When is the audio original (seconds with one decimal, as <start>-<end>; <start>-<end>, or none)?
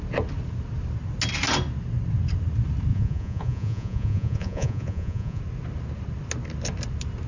0.0-2.9; 5.4-7.3